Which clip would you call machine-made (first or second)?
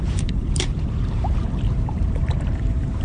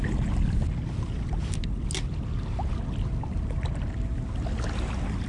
first